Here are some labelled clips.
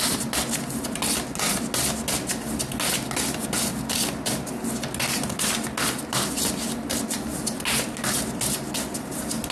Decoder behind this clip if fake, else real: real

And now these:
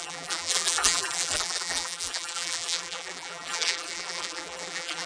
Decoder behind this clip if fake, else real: fake, vocoder, BigVGAN v2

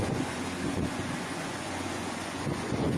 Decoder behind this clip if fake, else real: fake, vocoder, Vocos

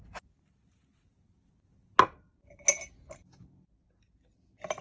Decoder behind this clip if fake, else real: real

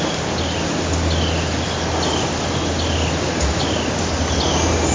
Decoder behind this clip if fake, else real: real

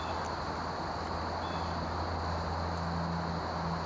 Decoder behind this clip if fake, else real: real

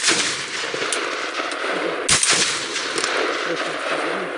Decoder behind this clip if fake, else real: real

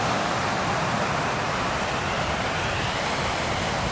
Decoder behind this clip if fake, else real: real